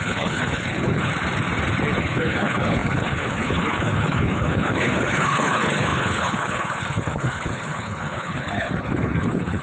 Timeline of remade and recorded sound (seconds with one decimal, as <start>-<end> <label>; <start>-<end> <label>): 0.0-1.1 remade; 1.1-2.0 recorded; 2.0-9.6 remade